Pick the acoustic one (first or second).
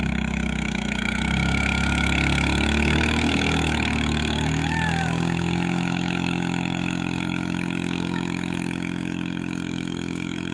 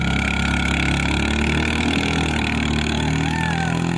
second